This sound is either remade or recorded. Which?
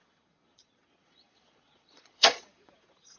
remade